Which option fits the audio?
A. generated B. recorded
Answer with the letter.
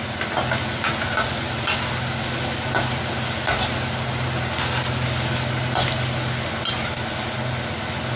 B